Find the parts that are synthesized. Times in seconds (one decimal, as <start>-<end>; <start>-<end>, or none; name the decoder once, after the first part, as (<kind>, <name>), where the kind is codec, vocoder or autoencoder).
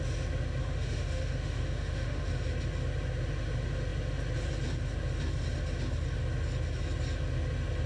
0.6-2.3 (autoencoder, DAC-VAE)